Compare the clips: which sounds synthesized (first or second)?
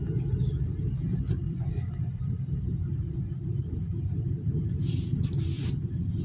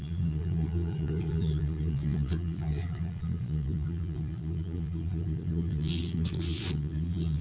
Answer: second